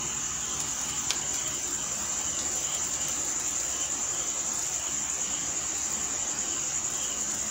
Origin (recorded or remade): recorded